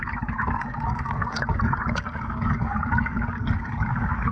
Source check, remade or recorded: remade